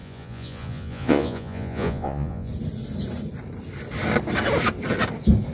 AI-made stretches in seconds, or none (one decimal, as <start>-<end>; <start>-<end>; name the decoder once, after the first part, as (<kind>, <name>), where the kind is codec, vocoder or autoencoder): 0.0-2.5 (vocoder, Vocos)